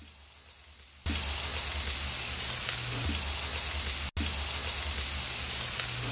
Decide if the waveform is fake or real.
real